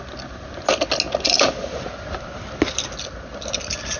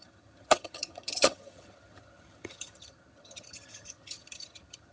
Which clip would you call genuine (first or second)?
first